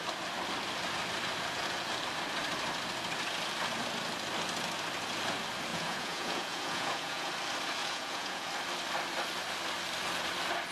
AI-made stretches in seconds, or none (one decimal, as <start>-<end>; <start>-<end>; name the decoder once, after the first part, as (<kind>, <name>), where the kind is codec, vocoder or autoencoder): 5.7-7.3 (vocoder, Vocos); 7.8-8.5